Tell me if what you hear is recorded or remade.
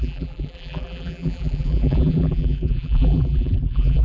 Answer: remade